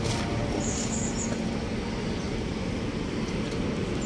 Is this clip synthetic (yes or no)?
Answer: no